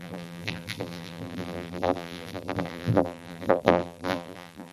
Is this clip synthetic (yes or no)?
yes